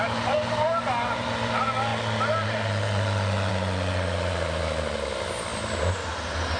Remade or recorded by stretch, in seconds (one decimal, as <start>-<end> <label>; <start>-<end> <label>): 0.0-6.6 recorded